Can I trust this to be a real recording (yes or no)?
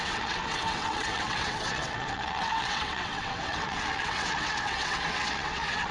no